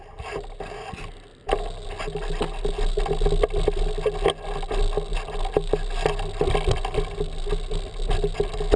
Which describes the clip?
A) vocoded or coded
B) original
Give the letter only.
B